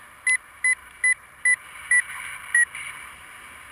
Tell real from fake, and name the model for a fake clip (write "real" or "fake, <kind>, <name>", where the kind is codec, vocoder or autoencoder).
real